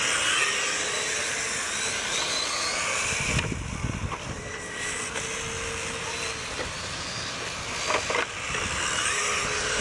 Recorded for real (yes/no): yes